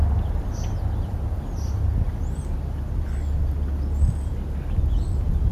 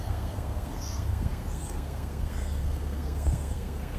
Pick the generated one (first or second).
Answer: second